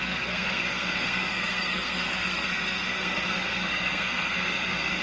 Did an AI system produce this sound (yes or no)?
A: yes